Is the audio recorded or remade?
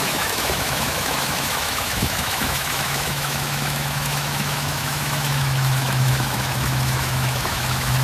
remade